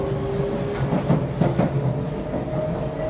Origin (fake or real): real